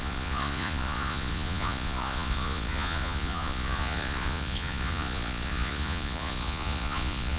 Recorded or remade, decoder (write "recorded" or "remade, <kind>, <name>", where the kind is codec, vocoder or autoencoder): remade, vocoder, Vocos